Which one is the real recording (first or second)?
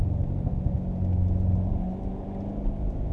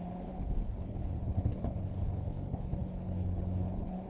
first